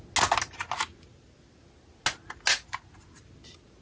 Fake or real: real